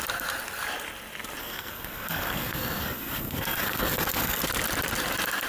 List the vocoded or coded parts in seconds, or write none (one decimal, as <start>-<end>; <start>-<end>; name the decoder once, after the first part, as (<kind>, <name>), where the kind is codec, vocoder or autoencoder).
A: 1.4-4.4 (codec, SNAC)